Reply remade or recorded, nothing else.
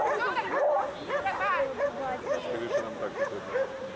recorded